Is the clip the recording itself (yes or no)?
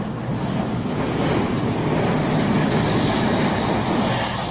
yes